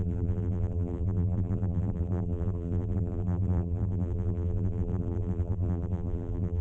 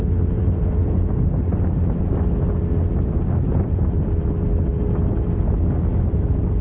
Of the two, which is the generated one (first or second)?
first